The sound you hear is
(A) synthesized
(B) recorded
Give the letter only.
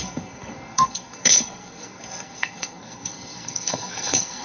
A